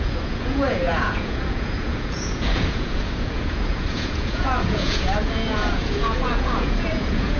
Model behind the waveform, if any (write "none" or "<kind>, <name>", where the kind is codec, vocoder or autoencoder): vocoder, Vocos